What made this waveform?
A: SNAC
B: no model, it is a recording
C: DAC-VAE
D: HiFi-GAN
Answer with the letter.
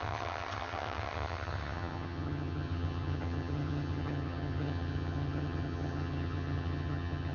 D